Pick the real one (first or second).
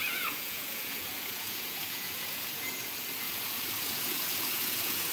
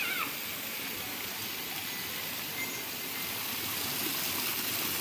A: second